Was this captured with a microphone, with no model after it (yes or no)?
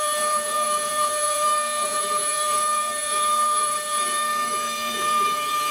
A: no